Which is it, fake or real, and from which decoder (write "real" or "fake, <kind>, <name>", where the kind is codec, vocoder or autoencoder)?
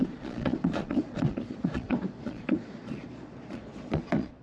fake, vocoder, Vocos